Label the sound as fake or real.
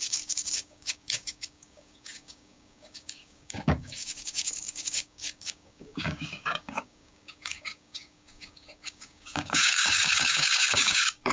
fake